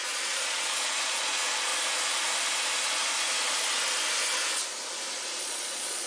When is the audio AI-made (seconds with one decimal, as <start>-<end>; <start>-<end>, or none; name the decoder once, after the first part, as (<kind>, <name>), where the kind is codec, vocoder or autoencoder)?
0.0-1.7 (vocoder, Vocos); 5.4-6.1